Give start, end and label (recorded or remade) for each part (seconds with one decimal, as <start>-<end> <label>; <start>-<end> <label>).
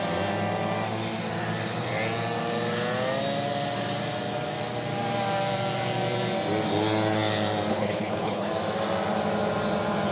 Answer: 0.0-7.7 recorded; 7.7-8.5 remade; 8.5-10.1 recorded